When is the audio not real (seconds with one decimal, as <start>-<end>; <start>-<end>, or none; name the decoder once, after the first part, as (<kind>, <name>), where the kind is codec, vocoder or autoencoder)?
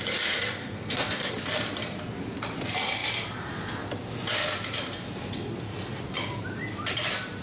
0.6-1.3 (codec, SNAC)